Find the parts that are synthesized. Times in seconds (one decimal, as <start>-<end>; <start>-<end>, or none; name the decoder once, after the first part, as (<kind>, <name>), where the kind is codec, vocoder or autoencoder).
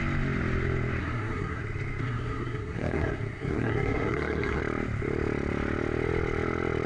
1.0-1.6 (codec, SNAC); 2.0-4.6